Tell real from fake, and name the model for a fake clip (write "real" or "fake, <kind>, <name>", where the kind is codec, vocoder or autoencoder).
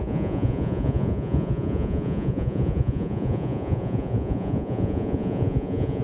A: fake, vocoder, Vocos